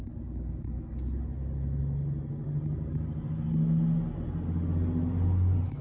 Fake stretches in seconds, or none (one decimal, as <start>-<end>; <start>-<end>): none